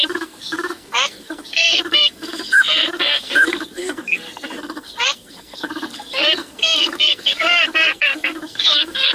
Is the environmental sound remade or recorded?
remade